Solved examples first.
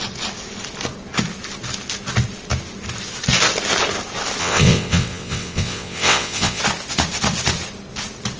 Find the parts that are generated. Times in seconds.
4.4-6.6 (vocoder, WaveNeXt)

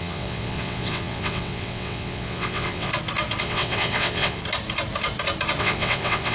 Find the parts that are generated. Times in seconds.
0.0-2.9 (vocoder, WaveNeXt); 3.4-4.4; 5.6-6.3

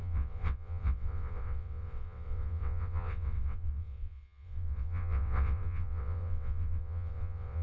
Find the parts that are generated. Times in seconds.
0.0-7.6 (vocoder, WaveNeXt)

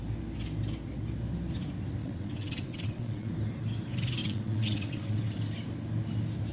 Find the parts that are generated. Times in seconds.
2.0-3.3 (vocoder, WaveNeXt); 4.2-5.2